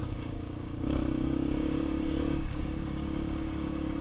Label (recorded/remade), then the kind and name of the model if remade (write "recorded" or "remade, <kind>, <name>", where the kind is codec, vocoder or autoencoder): remade, codec, DAC